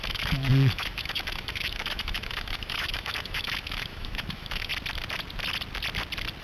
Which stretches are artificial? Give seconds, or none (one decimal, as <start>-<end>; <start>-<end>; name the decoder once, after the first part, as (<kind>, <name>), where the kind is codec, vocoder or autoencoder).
0.0-4.7 (autoencoder, DAC-VAE)